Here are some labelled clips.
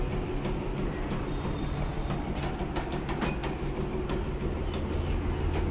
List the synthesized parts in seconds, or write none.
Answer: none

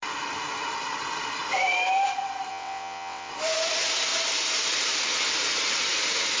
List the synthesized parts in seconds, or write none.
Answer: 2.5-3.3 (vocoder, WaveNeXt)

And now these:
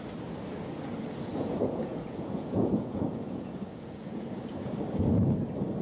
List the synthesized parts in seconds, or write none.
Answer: 1.3-4.8 (vocoder, Vocos)

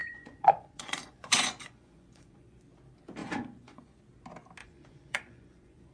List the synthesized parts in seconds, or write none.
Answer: 0.0-2.6 (vocoder, Vocos); 3.2-4.0; 4.6-5.9

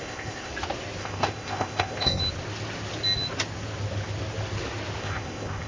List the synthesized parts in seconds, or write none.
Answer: 0.0-0.5 (codec, ZipCodec); 1.0-2.2; 5.0-5.7

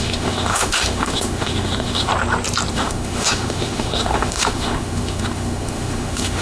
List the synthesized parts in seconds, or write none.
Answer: 0.0-2.1 (autoencoder, DAC-VAE); 2.7-6.4

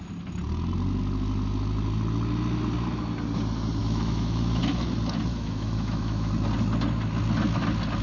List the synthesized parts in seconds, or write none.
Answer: 3.8-4.6 (autoencoder, DAC-VAE); 5.3-6.3